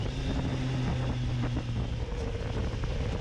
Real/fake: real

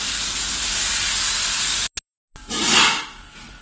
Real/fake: real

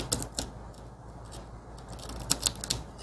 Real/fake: real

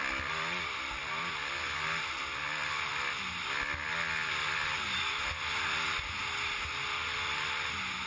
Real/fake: real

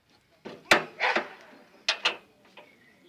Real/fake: real